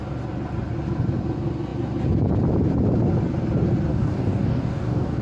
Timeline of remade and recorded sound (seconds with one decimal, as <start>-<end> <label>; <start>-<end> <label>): 0.0-3.9 recorded; 3.9-5.2 remade